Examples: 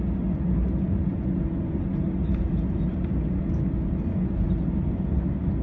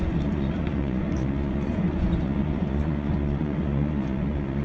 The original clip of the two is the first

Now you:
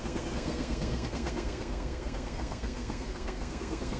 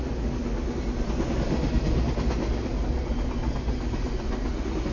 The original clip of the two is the second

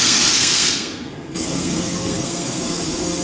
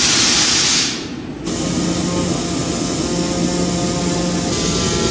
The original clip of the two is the second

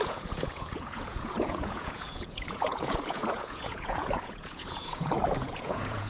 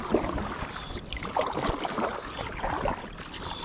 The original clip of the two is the second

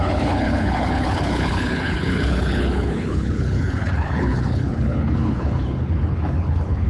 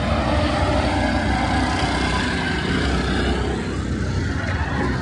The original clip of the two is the second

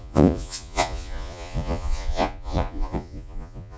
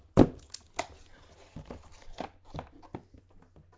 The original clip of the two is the second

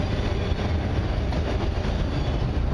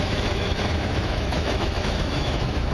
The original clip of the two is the first